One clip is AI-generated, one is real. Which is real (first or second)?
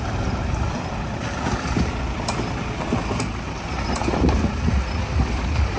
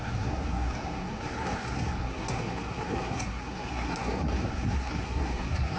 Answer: first